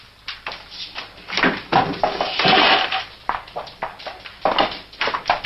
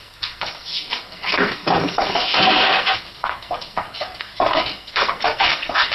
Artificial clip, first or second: second